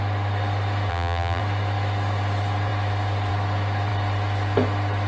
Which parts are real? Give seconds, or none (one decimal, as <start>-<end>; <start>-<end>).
0.0-0.9; 1.4-5.1